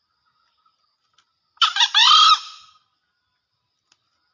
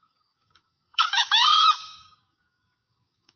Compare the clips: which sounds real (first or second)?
first